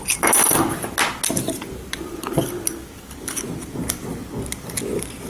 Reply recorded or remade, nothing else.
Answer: recorded